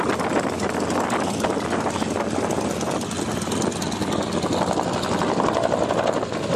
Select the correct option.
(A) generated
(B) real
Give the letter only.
B